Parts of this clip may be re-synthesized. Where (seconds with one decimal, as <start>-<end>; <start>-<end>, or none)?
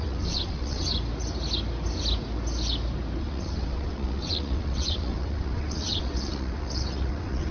0.0-0.9; 3.2-7.5